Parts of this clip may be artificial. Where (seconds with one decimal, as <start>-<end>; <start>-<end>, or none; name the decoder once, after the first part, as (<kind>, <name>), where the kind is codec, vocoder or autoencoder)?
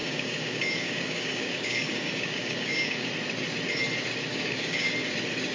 0.0-3.1 (codec, DAC); 4.3-4.9